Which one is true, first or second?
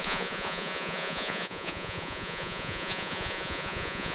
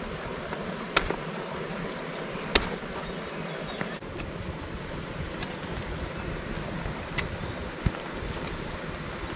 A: second